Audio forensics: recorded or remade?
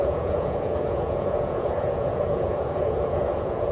remade